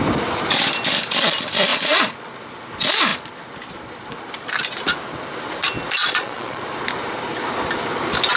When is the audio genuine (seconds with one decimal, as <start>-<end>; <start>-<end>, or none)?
0.0-1.7; 2.3-6.0; 6.6-8.4